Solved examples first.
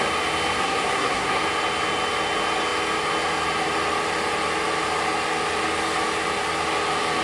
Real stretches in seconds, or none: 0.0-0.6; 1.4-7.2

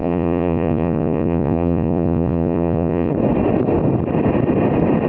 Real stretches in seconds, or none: 3.1-5.1

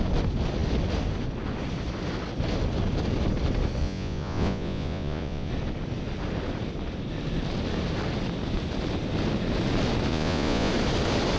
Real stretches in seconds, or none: 0.0-3.8; 5.5-10.1; 10.7-11.4

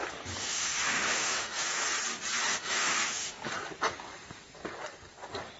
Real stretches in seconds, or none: 0.0-0.4; 1.8-2.5; 3.5-5.6